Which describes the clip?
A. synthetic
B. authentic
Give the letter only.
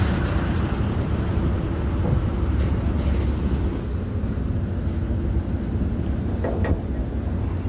B